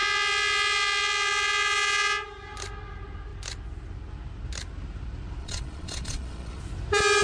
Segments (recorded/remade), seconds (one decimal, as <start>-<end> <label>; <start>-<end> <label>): 0.0-5.4 recorded; 5.4-6.6 remade; 6.6-7.2 recorded